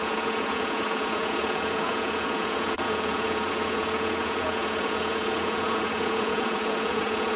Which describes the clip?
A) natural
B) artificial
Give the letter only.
B